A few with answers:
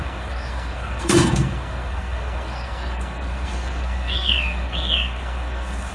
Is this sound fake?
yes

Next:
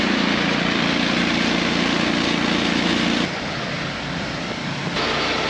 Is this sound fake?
no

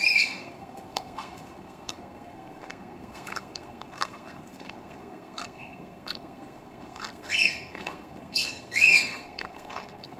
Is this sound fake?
yes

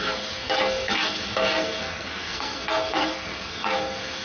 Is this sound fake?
yes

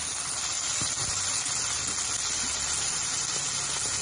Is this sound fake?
no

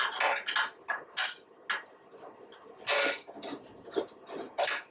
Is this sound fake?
no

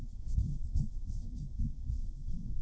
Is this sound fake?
yes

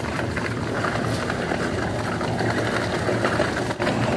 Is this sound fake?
no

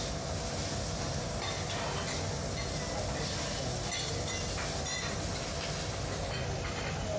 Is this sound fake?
no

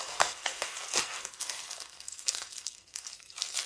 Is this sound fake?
yes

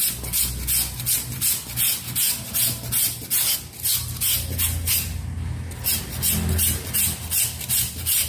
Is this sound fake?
no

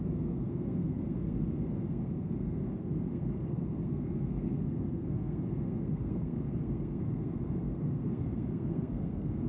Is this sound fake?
yes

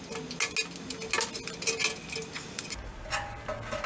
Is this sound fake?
no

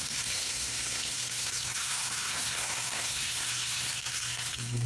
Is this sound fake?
yes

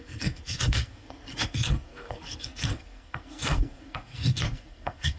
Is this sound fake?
yes